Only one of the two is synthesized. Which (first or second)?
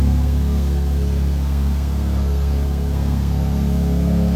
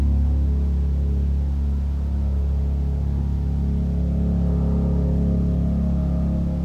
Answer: first